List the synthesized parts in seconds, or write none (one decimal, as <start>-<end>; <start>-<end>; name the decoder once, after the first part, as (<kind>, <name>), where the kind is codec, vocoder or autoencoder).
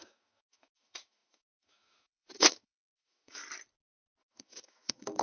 0.0-3.4 (autoencoder, DAC-VAE); 4.2-5.2